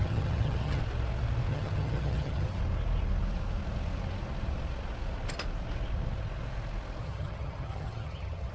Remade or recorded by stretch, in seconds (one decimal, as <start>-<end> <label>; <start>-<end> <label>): 0.0-0.8 remade; 0.8-1.5 recorded; 1.5-2.6 remade; 2.6-7.0 recorded; 7.0-8.5 remade